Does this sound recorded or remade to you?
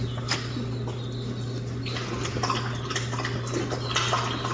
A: recorded